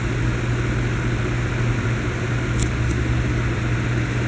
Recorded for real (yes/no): yes